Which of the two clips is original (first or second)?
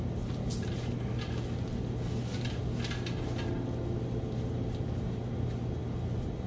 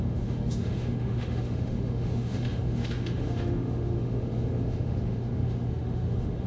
first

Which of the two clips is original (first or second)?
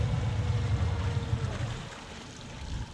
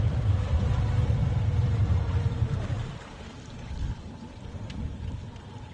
first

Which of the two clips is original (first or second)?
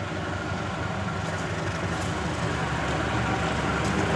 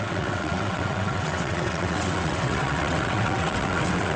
first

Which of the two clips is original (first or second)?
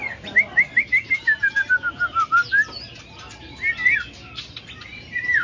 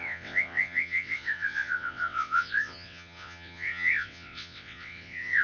first